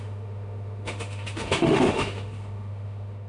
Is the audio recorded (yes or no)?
no